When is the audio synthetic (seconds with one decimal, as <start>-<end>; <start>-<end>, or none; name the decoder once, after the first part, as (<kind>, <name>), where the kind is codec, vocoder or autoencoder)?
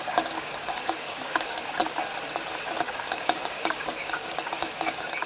0.0-1.8 (codec, DAC); 2.8-5.3